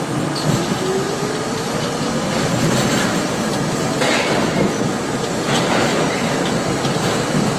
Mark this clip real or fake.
real